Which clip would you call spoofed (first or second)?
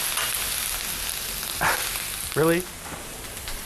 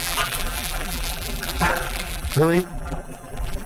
second